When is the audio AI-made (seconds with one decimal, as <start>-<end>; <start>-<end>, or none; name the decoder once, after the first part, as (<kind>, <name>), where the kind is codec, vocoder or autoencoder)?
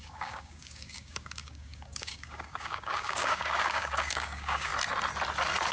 0.0-4.7 (codec, DAC)